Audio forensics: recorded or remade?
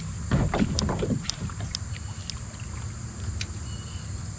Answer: recorded